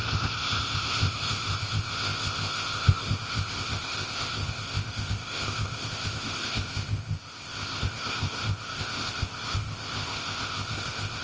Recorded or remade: remade